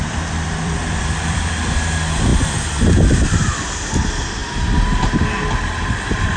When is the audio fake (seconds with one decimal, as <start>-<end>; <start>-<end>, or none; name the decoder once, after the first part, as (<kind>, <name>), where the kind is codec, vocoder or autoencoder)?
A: 0.0-1.5 (vocoder, BigVGAN v2)